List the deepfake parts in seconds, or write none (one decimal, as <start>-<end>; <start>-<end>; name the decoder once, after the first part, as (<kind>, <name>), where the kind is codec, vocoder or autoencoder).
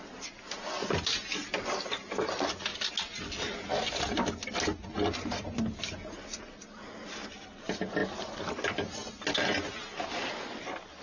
none